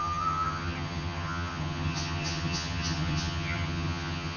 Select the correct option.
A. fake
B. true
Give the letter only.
A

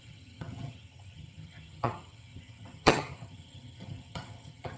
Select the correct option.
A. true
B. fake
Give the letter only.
B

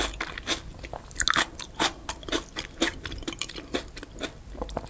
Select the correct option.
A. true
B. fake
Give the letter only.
A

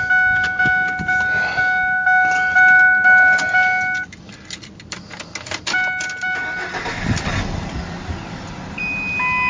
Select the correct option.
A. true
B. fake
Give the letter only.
A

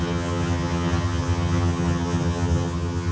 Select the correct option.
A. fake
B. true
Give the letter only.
A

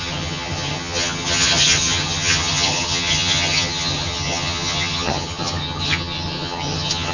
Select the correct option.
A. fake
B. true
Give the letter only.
A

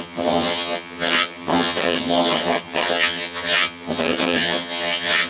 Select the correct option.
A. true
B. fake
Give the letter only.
B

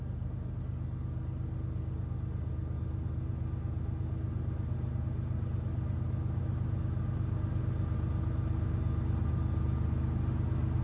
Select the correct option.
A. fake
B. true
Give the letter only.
B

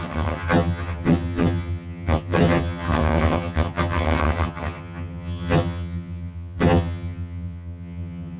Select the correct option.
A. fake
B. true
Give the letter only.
A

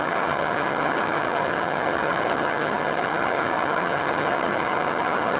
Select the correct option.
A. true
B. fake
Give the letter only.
B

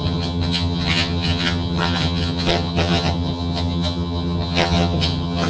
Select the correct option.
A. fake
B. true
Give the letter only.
A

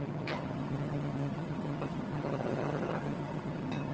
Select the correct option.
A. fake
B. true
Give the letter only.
A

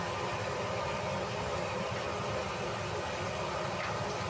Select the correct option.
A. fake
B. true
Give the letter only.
B